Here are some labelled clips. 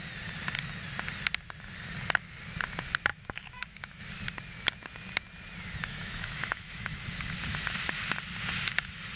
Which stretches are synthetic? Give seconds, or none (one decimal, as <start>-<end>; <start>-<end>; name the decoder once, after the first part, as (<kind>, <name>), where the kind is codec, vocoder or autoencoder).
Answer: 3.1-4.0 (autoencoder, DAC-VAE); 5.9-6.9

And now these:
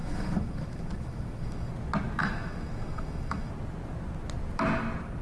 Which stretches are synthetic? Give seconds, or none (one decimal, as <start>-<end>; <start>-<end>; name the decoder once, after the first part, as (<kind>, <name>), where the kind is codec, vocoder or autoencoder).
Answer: 0.0-1.7 (autoencoder, DAC-VAE); 2.2-3.5

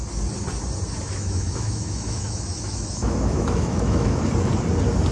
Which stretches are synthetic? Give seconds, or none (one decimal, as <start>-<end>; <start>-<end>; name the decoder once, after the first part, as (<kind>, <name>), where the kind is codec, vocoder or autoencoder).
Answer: 1.1-4.2 (autoencoder, DAC-VAE)